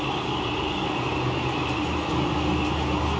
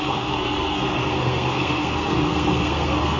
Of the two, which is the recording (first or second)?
first